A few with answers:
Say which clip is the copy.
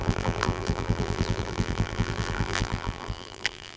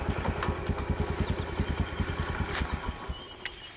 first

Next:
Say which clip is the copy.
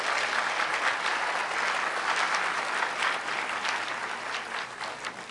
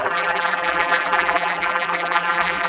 second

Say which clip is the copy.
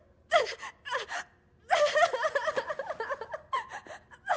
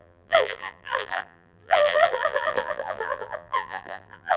second